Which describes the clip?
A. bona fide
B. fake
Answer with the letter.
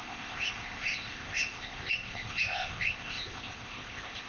B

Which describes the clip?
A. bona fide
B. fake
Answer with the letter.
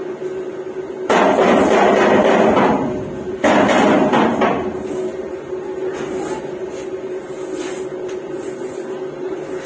A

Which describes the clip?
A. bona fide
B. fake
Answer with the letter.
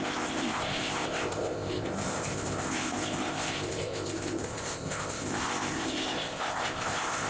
B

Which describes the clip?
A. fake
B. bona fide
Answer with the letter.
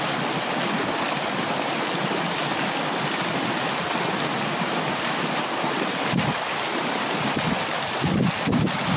B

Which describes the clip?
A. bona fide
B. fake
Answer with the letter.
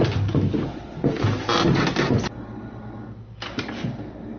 A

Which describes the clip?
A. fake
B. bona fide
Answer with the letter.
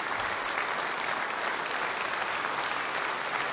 B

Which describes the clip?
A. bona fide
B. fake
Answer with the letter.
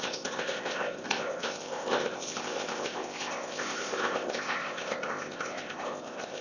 B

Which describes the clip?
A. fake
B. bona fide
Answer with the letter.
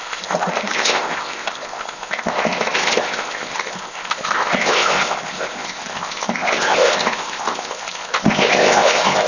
A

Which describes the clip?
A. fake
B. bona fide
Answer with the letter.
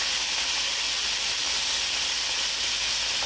B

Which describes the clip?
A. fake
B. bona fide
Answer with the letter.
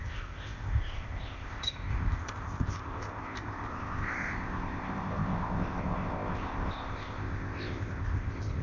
A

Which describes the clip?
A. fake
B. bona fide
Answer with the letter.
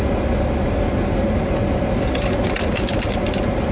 B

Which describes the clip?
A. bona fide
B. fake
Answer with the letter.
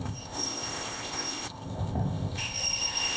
B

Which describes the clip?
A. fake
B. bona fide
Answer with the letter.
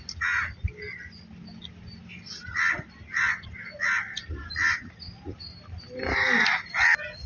B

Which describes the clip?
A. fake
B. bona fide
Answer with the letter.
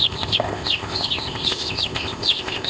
A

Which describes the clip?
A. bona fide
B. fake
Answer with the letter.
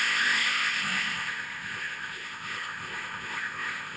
B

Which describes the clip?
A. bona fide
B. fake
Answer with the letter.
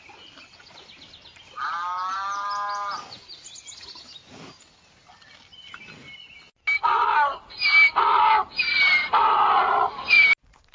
A